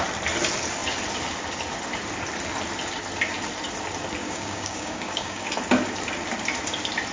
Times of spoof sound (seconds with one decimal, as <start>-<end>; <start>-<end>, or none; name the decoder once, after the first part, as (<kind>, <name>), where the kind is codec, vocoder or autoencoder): 4.2-5.5 (codec, DAC)